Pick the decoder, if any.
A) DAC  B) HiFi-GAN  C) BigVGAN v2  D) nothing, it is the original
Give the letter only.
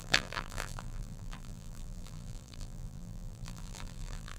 C